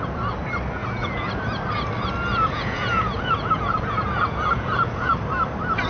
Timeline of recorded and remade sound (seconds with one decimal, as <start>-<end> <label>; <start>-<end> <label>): 0.0-0.8 recorded; 0.8-1.4 remade; 1.4-2.3 recorded; 2.3-5.1 remade; 5.1-5.9 recorded